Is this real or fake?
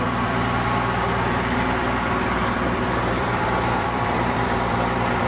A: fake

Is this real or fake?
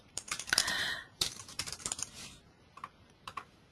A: fake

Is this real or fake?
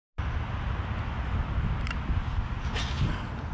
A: real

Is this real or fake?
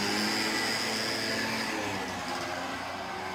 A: real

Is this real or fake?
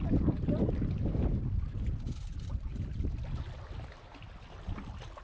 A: real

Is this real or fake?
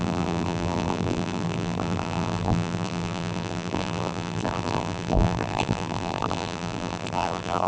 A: fake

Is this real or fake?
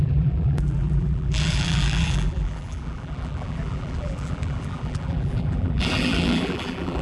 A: fake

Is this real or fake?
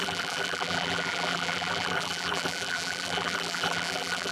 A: fake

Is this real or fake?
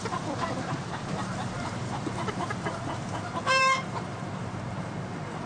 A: fake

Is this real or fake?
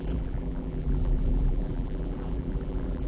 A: fake